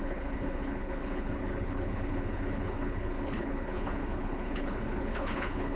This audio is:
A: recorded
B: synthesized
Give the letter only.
B